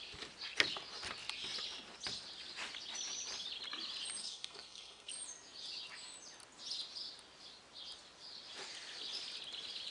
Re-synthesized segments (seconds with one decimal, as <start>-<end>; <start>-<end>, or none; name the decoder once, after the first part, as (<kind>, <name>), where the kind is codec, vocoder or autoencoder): 4.2-5.1 (codec, SNAC)